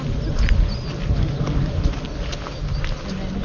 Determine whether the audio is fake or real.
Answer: real